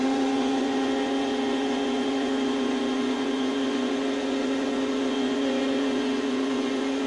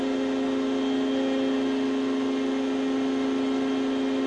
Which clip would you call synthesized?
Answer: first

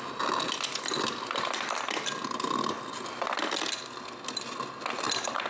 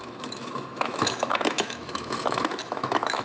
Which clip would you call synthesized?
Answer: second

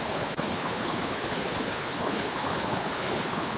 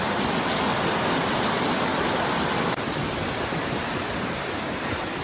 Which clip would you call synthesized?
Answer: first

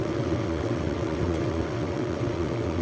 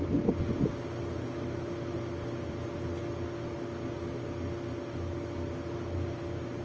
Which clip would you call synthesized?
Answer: first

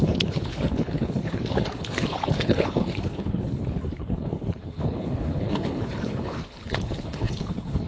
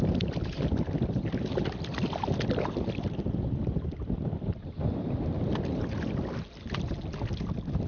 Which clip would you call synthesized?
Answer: first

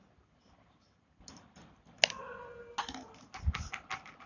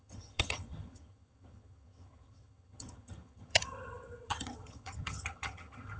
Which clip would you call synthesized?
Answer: second